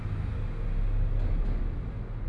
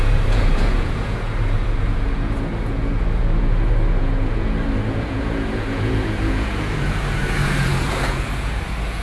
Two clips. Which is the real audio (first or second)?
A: first